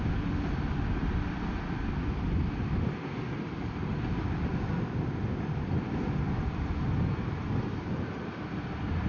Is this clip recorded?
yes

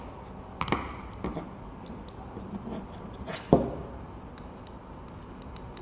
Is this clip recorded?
yes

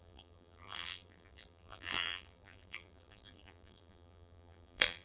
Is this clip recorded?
no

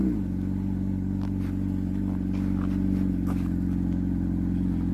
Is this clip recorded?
yes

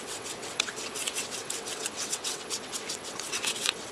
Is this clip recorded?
no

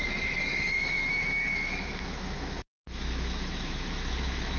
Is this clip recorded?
no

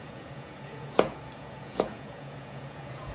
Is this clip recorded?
no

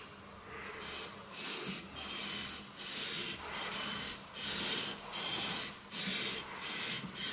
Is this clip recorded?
yes